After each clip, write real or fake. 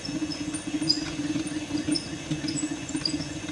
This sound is fake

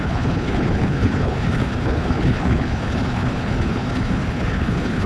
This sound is fake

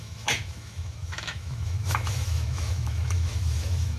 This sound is fake